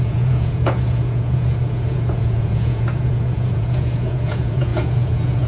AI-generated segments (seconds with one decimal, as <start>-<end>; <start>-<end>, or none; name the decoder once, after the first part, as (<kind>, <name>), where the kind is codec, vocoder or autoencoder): 0.0-5.5 (vocoder, Vocos)